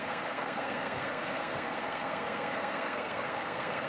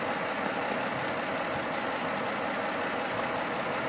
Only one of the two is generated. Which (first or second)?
first